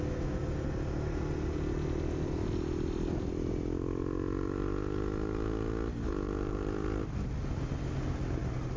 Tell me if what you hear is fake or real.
real